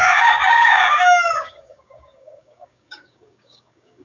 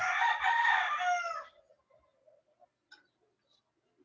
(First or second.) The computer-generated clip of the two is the first